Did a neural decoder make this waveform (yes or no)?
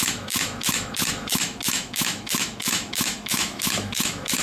yes